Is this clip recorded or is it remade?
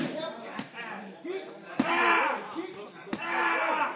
remade